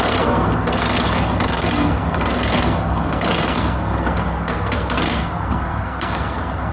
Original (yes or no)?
no